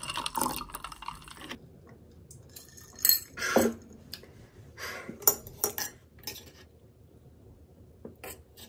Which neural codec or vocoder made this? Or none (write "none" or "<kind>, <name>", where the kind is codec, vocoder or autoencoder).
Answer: none